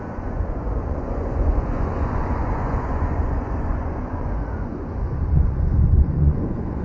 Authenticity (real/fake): fake